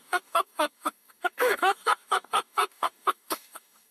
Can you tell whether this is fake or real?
fake